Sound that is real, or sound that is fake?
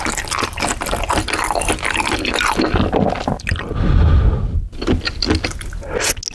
real